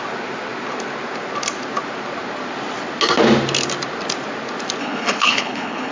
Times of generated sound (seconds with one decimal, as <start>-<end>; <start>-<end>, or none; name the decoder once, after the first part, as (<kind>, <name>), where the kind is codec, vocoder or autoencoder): 4.8-5.9 (codec, HILCodec)